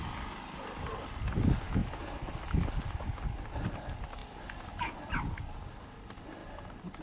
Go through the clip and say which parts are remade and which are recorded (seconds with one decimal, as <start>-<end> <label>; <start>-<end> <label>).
0.0-6.4 recorded; 6.4-7.0 remade